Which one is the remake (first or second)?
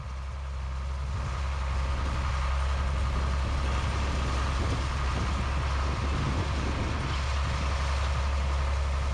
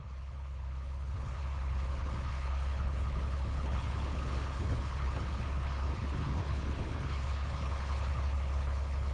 second